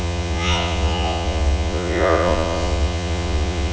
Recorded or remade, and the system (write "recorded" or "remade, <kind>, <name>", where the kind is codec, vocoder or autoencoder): remade, vocoder, Vocos